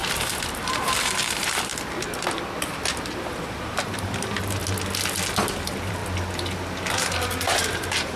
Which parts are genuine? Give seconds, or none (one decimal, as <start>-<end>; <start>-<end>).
1.7-3.0; 4.6-5.4; 6.0-6.9